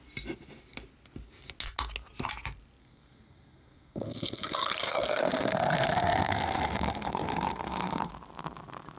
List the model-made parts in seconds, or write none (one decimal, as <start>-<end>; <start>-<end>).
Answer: 2.8-8.1